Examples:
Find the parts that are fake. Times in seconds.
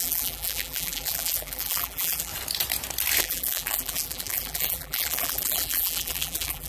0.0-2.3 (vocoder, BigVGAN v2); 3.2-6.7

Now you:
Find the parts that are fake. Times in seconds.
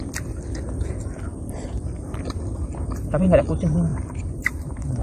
1.3-3.4 (vocoder, BigVGAN v2); 3.9-5.0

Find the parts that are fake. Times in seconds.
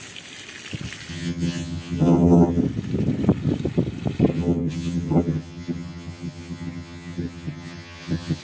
1.1-2.6 (vocoder, HiFi-GAN); 4.3-8.4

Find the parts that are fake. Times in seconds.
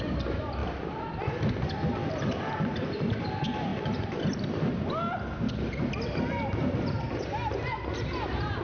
0.0-8.6 (vocoder, BigVGAN v2)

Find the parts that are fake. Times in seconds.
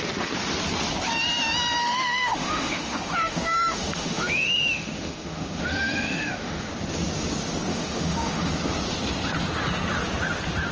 1.8-6.7 (autoencoder, DAC-VAE); 7.7-8.5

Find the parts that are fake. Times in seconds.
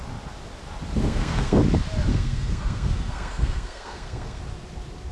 1.0-1.6 (codec, SNAC); 2.1-4.4